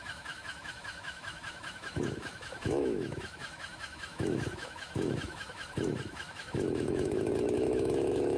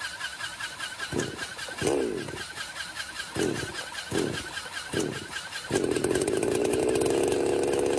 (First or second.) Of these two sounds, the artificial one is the first